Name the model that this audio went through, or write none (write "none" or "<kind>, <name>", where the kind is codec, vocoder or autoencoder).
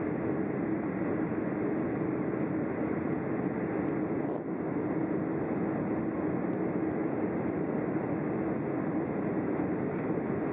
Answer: none